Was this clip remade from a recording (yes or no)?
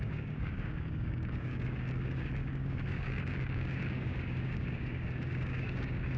yes